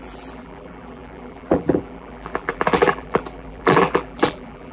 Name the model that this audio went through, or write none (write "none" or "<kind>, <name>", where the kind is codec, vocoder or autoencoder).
vocoder, BigVGAN v2